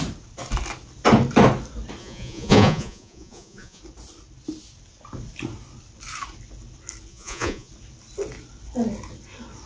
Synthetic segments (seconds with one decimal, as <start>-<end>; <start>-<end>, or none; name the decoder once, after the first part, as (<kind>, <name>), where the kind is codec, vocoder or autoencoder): 2.0-3.8 (vocoder, Vocos); 7.1-7.7